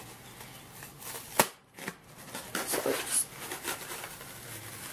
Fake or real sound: real